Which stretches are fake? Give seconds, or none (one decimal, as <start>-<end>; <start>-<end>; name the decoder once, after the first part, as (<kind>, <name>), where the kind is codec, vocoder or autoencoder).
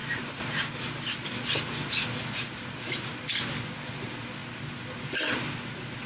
0.0-0.7 (vocoder, BigVGAN v2)